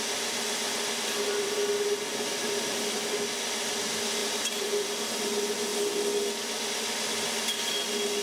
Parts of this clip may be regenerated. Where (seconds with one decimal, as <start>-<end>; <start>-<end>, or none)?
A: 4.2-5.1